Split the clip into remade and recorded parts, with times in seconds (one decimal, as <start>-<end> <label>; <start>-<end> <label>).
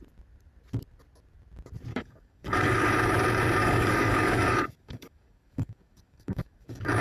0.0-1.9 recorded; 1.9-2.9 remade; 2.9-3.6 recorded; 3.6-7.0 remade